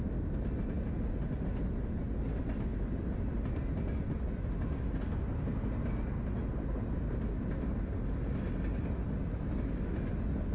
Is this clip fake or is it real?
real